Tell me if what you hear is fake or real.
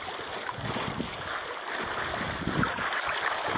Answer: real